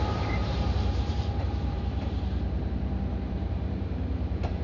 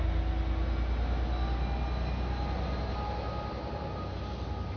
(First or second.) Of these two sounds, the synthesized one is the first